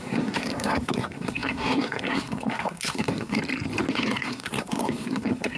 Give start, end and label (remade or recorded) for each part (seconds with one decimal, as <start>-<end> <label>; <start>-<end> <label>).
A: 0.0-3.4 remade; 3.4-3.9 recorded; 3.9-5.6 remade